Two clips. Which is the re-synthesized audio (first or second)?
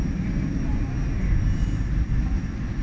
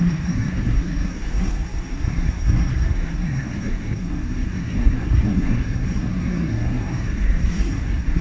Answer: second